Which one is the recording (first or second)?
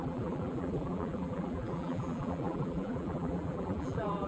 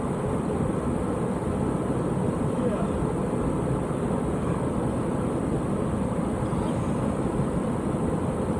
second